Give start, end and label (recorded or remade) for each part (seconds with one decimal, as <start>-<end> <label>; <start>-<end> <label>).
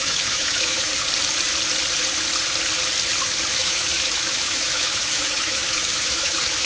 0.0-0.9 remade; 0.9-3.5 recorded; 3.5-6.7 remade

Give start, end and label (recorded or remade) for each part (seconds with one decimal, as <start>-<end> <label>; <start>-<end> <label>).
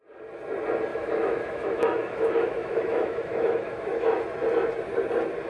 0.0-0.9 recorded; 0.9-4.2 remade; 4.2-5.5 recorded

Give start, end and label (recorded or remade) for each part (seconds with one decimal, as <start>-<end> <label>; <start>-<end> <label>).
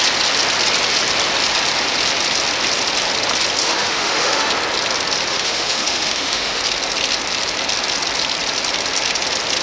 0.0-3.6 recorded; 3.6-4.5 remade; 4.5-5.3 recorded; 5.3-6.6 remade; 6.6-9.6 recorded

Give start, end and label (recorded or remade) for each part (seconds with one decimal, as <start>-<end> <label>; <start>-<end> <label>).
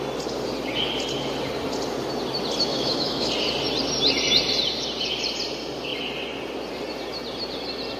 0.0-2.7 recorded; 2.7-3.3 remade; 3.3-8.0 recorded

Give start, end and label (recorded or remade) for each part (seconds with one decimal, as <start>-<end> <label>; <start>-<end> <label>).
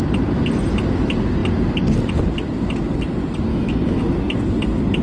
0.0-3.5 recorded; 3.5-4.0 remade; 4.0-5.0 recorded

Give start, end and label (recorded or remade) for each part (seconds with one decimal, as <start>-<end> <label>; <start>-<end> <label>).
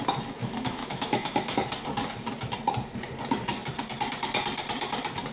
0.0-0.4 recorded; 0.4-1.6 remade; 1.6-5.3 recorded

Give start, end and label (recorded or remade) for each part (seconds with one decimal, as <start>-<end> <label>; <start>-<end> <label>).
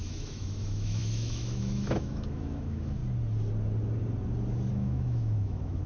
0.0-3.0 remade; 3.0-4.7 recorded; 4.7-5.9 remade